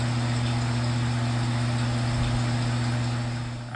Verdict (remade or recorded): recorded